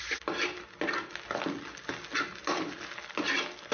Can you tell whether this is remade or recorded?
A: recorded